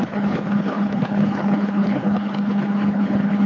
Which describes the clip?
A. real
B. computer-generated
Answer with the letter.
B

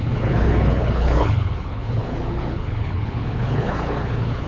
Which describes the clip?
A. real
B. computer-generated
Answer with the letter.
B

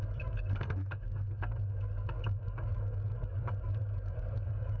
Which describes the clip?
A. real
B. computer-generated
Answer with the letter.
B